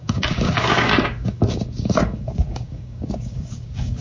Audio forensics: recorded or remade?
remade